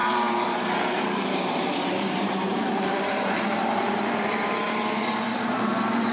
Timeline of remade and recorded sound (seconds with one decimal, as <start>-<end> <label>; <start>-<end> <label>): 0.0-6.1 remade